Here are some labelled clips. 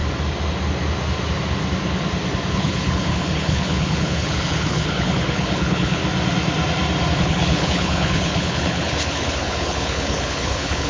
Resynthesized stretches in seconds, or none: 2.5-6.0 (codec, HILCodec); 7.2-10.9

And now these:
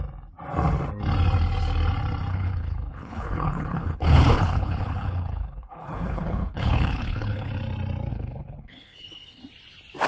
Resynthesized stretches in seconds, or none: 2.3-7.5 (codec, HILCodec); 8.1-9.4

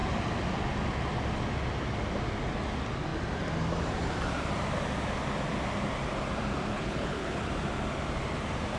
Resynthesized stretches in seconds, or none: 6.7-7.5 (codec, HILCodec)

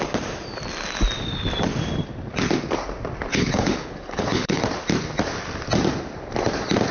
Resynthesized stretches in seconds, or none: 3.3-4.6 (codec, HILCodec)